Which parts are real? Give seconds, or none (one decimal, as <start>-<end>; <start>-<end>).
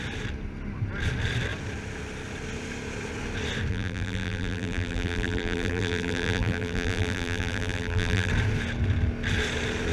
0.0-3.7; 8.3-9.9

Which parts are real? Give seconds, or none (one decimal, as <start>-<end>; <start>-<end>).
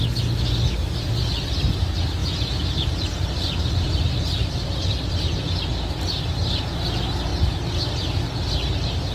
0.0-2.2; 3.6-4.4; 5.3-9.1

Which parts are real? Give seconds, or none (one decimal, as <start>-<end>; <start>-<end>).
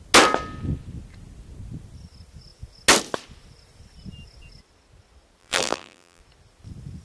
0.0-5.4; 6.2-7.0